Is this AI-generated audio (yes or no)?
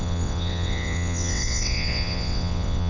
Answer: yes